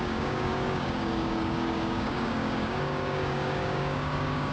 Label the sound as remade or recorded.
remade